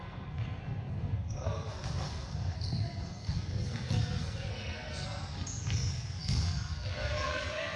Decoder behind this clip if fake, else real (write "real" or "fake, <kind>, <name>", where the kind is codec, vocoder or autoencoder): fake, codec, SNAC